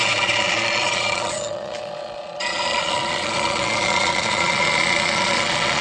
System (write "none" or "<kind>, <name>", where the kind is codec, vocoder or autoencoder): vocoder, Vocos